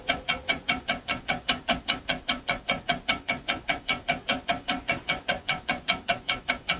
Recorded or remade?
remade